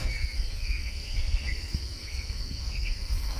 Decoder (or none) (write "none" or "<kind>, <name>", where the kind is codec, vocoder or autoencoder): codec, SNAC